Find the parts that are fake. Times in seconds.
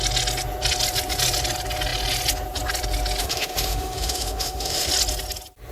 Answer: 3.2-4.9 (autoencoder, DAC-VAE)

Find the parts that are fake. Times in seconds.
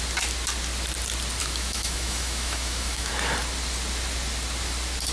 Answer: 1.4-3.1 (autoencoder, DAC-VAE)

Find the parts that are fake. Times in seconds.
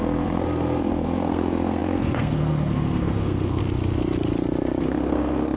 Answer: 0.0-3.6 (codec, SNAC); 4.8-5.6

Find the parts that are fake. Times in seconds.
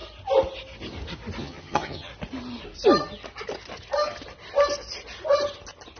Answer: 1.4-2.1 (vocoder, HiFi-GAN)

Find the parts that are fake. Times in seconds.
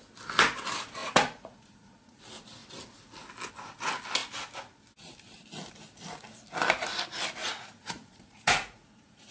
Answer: 1.0-2.2 (vocoder, Vocos); 7.4-9.3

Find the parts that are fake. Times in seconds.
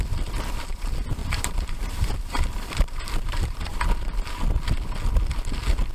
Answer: 1.2-3.8 (vocoder, BigVGAN v2)